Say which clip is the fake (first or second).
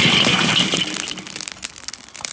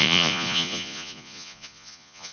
second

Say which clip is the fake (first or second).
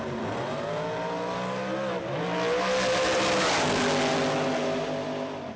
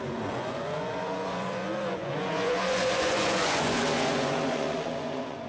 second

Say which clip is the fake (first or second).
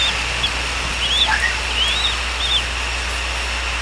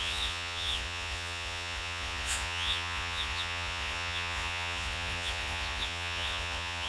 second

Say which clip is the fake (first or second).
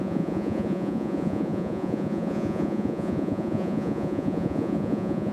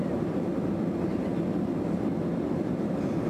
first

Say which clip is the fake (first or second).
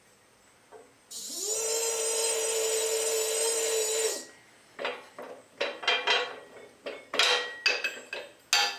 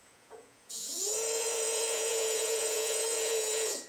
second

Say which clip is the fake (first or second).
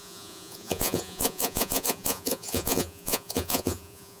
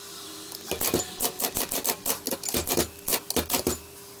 first